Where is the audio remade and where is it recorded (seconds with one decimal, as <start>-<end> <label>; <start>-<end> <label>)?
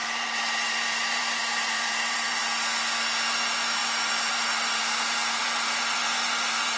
0.0-2.4 remade; 2.4-3.3 recorded; 3.3-6.8 remade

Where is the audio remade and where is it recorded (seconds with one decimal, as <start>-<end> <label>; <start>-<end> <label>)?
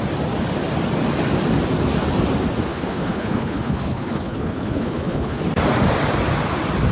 0.0-2.7 recorded; 2.7-5.4 remade; 5.4-6.9 recorded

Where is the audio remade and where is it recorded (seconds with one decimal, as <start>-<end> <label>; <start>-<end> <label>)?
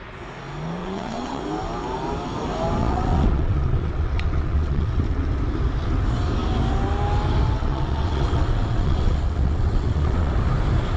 0.0-0.8 recorded; 0.8-1.4 remade; 1.4-2.8 recorded; 2.8-5.3 remade; 5.3-7.6 recorded; 7.6-10.3 remade; 10.3-11.0 recorded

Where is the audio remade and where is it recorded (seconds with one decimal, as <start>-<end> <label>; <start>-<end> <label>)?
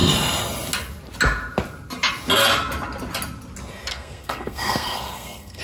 0.0-3.9 recorded; 3.9-5.6 remade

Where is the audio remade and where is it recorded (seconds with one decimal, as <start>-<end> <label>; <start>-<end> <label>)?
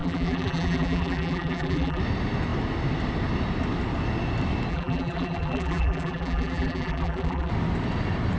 0.0-2.0 remade; 2.0-4.7 recorded; 4.7-7.5 remade; 7.5-8.4 recorded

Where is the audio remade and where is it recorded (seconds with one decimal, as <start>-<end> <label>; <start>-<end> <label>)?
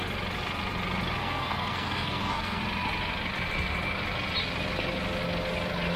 0.0-1.2 recorded; 1.2-2.6 remade; 2.6-6.0 recorded